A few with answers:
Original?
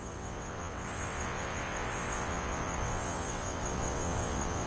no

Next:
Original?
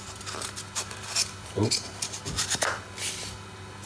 yes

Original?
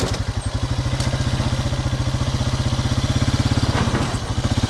yes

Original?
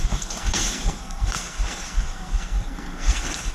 no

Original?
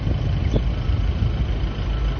yes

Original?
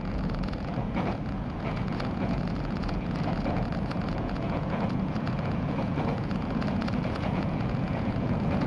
no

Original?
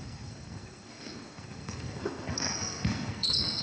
no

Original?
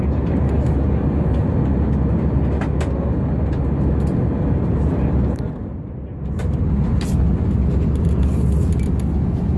yes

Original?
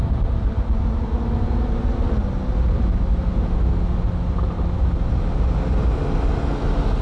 yes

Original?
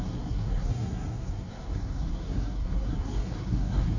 no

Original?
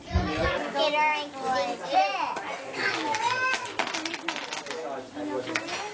yes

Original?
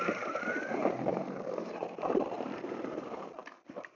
no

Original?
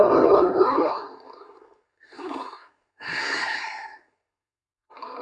no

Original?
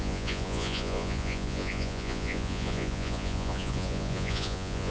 no